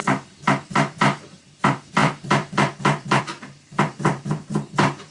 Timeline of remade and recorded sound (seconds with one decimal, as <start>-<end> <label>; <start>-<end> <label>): 0.0-5.1 remade

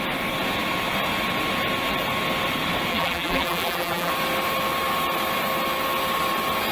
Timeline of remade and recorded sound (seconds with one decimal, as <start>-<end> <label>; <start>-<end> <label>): 0.0-2.9 recorded; 2.9-4.1 remade; 4.1-6.7 recorded

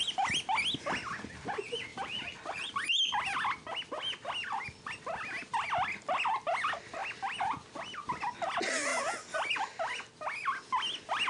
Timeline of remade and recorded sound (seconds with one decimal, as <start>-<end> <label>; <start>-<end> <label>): 0.0-1.9 recorded; 1.9-2.7 remade; 2.7-11.3 recorded

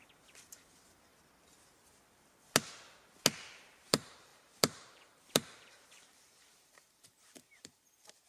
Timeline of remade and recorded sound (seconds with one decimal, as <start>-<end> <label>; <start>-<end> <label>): 0.0-1.1 remade; 1.1-3.6 recorded; 3.6-8.3 remade

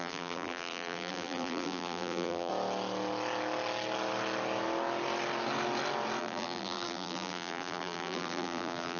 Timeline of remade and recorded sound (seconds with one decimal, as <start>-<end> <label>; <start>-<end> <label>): 0.0-2.5 remade; 2.5-6.2 recorded; 6.2-9.0 remade

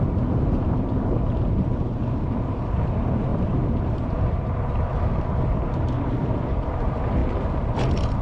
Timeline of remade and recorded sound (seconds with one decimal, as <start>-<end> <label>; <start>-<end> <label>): 0.0-3.3 remade; 3.3-3.8 recorded; 3.8-7.2 remade; 7.2-8.2 recorded

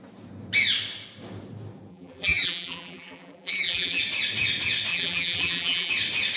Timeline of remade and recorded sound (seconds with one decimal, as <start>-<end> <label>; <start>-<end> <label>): 0.0-1.9 recorded; 1.9-4.0 remade; 4.0-4.9 recorded; 4.9-5.9 remade; 5.9-6.4 recorded